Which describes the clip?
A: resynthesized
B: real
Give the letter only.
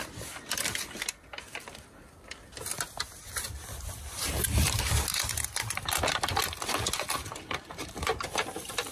B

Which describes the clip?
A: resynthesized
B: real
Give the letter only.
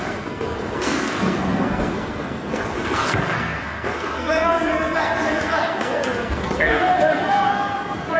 A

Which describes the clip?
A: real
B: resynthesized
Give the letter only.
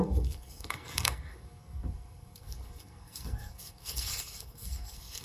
B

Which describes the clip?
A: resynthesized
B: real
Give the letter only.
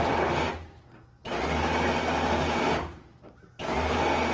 B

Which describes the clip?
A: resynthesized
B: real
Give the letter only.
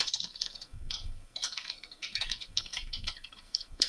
A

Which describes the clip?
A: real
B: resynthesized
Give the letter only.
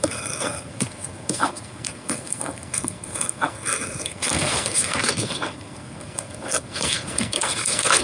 B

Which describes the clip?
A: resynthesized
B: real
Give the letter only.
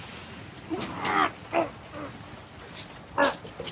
B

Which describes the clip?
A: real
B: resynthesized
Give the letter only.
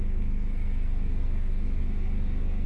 B